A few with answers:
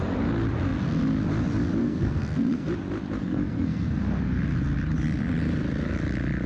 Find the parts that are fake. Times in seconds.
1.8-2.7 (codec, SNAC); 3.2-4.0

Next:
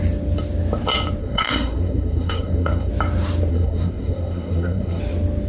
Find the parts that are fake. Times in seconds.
1.2-2.9 (codec, SNAC); 3.5-5.0

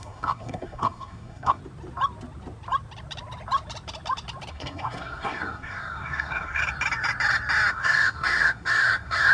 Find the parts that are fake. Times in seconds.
0.0-1.6 (codec, SNAC); 4.5-6.6; 7.7-9.3

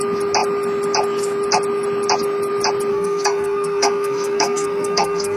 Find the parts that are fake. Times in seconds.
2.9-5.4 (codec, SNAC)

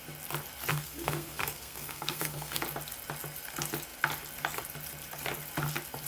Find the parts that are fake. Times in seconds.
0.7-2.6 (codec, SNAC)